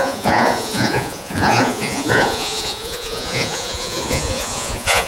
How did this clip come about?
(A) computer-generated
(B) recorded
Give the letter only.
A